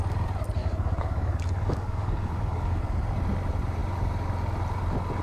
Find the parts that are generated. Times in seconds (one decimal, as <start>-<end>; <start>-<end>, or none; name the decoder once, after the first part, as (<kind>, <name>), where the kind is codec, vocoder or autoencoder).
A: 0.6-2.8 (codec, DAC)